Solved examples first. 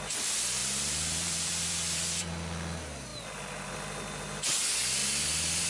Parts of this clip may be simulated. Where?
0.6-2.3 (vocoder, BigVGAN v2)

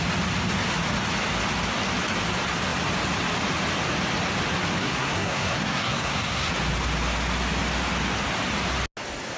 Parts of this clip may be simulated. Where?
4.8-6.5 (codec, SNAC)

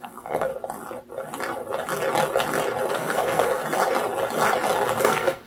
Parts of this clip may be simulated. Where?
0.0-0.5 (codec, SNAC); 2.9-3.6; 5.0-5.5

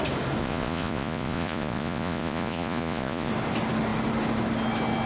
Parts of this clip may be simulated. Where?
0.4-3.3 (vocoder, Vocos)